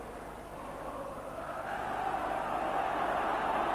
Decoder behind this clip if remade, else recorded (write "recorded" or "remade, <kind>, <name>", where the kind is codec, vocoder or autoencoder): recorded